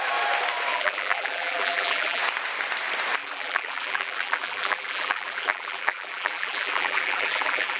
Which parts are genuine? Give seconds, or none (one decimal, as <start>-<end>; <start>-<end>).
0.0-0.7; 2.2-3.2